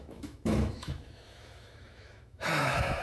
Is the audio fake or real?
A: fake